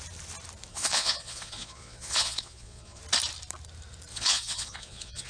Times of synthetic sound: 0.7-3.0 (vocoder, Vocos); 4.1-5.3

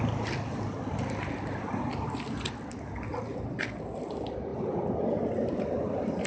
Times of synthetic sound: none

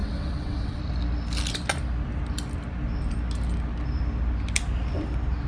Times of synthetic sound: 0.0-0.8 (vocoder, WaveNeXt)

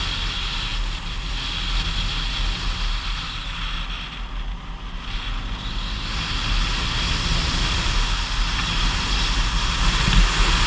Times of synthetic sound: none